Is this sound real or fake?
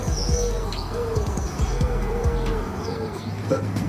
fake